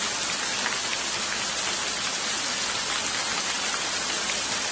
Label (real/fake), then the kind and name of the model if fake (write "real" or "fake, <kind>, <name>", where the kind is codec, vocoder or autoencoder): real